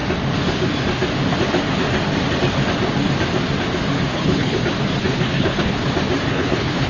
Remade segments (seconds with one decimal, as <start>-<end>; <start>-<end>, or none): 4.1-4.6; 5.0-5.8; 6.3-6.9